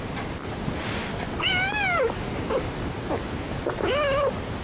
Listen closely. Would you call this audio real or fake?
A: real